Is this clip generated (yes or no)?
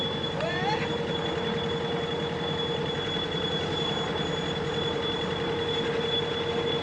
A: no